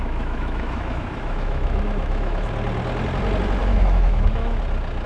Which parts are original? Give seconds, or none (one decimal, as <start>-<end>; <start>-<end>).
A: 2.5-3.6; 4.6-5.1

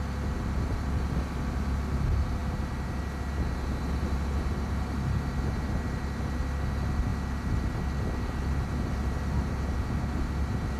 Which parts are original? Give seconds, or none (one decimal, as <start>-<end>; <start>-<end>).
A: 0.0-10.8

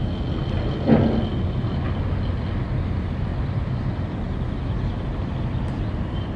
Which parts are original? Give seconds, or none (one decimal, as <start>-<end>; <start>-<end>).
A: 0.0-6.4